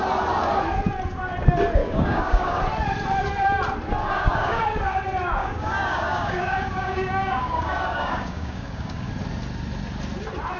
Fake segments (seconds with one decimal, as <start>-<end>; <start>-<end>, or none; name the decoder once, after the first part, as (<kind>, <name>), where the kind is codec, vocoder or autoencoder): 1.8-2.6 (codec, DAC); 4.0-4.6; 5.4-9.1